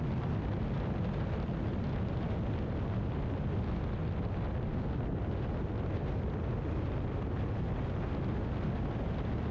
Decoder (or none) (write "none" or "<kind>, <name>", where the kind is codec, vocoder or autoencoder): none